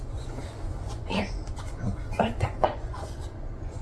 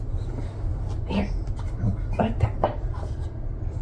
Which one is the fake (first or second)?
first